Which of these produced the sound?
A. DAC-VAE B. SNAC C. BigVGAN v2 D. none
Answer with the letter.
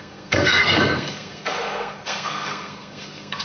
B